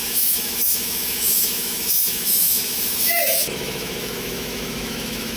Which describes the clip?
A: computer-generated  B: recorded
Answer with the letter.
A